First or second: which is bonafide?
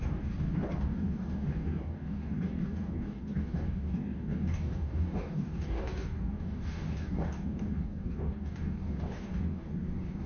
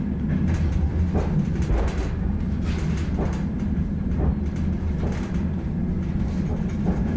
second